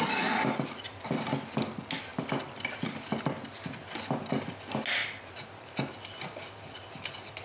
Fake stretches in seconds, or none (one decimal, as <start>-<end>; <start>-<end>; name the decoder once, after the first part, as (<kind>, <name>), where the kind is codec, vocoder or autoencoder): none